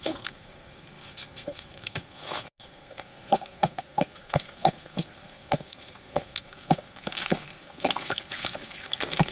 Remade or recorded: remade